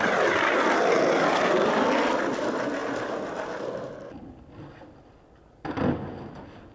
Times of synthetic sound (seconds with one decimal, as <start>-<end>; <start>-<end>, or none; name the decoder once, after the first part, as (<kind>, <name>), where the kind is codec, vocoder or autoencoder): none